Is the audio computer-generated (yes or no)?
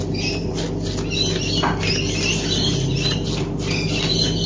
no